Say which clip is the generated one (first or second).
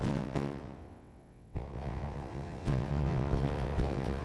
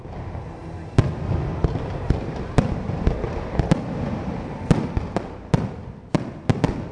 first